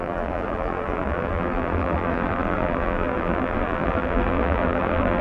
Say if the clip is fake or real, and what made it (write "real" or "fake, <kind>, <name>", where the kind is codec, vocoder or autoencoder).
fake, vocoder, BigVGAN v2